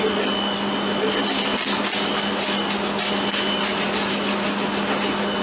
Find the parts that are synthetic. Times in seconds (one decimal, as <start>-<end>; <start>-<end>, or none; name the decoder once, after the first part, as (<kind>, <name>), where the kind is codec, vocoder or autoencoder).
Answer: none